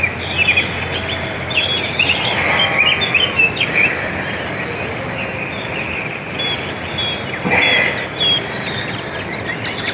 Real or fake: real